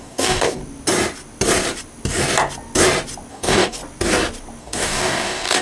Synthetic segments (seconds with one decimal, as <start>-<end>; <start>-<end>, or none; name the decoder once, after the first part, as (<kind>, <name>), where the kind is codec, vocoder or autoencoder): 0.0-0.6 (codec, DAC); 3.3-3.8; 4.6-5.6